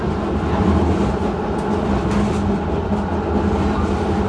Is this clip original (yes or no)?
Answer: yes